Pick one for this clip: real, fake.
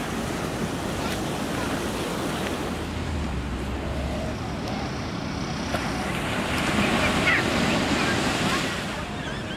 real